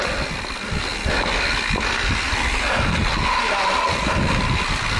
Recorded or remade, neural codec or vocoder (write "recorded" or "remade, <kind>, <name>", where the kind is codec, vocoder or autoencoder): recorded